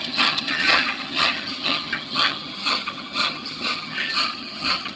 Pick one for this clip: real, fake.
fake